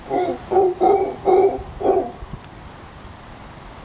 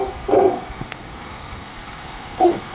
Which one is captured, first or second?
first